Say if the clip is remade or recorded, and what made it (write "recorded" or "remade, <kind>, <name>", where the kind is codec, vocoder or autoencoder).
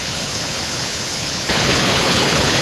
remade, codec, HILCodec